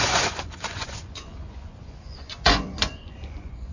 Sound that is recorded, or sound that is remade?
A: remade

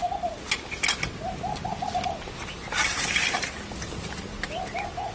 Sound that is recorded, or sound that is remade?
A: recorded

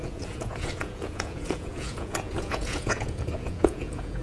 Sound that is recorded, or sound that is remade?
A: remade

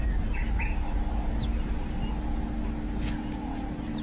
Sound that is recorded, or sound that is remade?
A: recorded